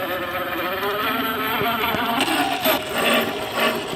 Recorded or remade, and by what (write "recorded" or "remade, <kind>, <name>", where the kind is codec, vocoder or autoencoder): recorded